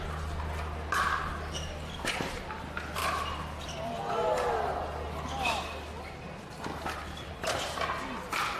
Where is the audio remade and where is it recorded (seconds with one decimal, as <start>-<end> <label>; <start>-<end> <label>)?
0.0-8.6 recorded